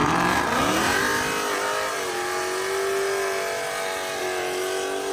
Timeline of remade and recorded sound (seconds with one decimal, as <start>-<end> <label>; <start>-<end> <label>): 0.0-5.1 recorded